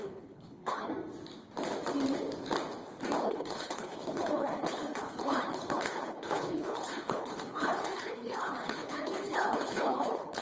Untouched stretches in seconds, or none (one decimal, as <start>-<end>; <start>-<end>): 0.9-3.2

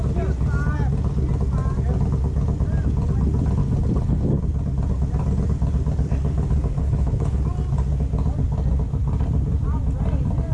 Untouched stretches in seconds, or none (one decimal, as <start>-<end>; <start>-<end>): 0.0-3.6; 4.4-6.8; 7.4-10.5

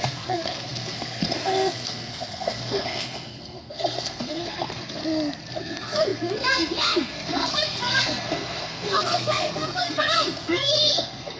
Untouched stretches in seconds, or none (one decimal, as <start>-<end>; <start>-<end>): 5.0-5.6

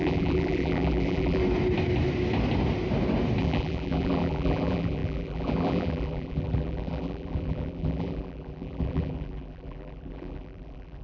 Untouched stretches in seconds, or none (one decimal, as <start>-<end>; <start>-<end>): 1.4-3.4

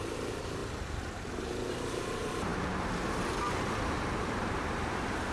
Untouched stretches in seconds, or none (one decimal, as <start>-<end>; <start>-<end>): none

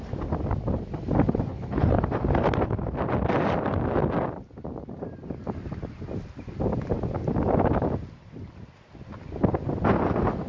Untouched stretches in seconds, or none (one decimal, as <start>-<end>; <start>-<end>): 0.0-1.5; 2.0-10.5

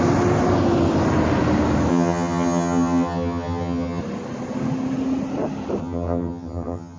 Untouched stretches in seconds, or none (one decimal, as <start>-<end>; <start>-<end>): 0.0-1.9; 4.0-5.8